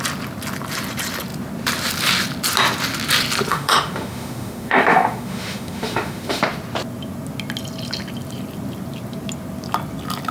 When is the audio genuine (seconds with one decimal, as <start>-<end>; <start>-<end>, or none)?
0.0-3.5; 6.4-10.3